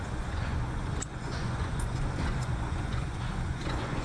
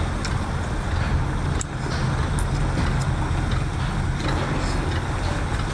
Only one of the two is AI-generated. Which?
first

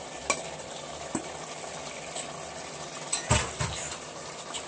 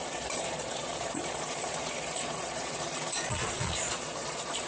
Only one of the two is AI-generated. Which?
second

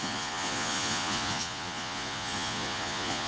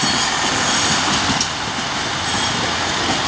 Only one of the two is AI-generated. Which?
first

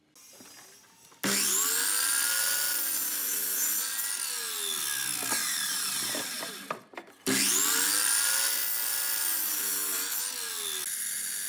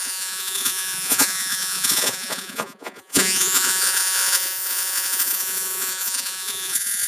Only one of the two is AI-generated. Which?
second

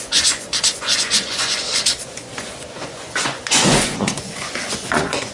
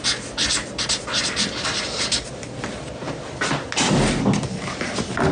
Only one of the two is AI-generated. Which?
first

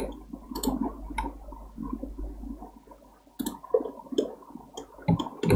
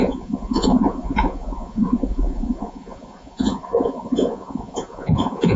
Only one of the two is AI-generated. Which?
second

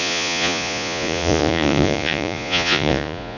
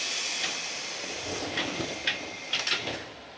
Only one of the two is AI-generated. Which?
first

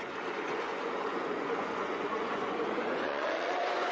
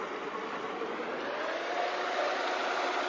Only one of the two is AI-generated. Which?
first